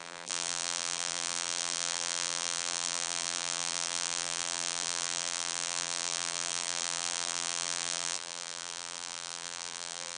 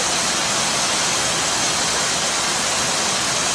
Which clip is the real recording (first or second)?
second